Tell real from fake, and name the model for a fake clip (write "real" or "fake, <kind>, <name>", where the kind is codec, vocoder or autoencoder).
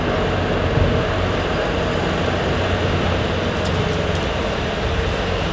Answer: real